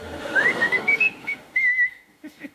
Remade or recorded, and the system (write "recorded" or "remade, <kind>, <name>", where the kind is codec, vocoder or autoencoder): remade, autoencoder, DAC-VAE